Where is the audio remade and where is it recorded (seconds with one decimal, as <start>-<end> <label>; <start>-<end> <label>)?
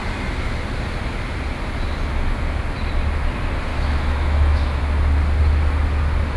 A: 0.0-3.7 recorded; 3.7-4.8 remade; 4.8-6.4 recorded